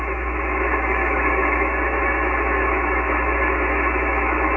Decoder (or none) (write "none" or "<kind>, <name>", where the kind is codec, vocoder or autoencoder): autoencoder, DAC-VAE